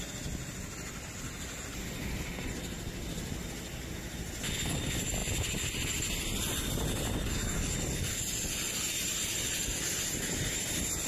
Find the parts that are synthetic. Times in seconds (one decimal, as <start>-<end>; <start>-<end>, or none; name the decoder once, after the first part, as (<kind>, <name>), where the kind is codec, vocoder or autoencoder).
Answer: none